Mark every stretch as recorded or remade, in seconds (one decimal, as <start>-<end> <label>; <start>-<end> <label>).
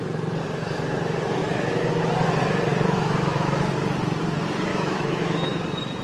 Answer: 0.0-1.4 recorded; 1.4-1.9 remade; 1.9-2.7 recorded; 2.7-3.6 remade; 3.6-4.7 recorded; 4.7-5.6 remade; 5.6-6.0 recorded